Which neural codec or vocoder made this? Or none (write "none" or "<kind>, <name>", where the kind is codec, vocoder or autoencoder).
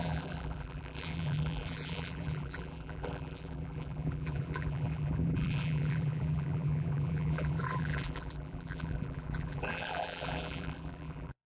vocoder, BigVGAN v2